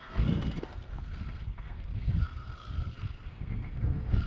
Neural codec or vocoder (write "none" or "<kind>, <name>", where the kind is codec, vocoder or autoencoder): codec, SNAC